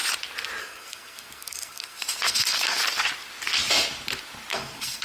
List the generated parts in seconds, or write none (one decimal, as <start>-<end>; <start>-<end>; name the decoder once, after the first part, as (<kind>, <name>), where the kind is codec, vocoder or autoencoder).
0.6-2.8 (codec, SNAC); 4.5-5.0